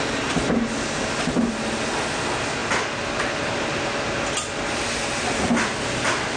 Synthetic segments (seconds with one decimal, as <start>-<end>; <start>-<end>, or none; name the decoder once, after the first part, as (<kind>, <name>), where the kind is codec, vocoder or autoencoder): none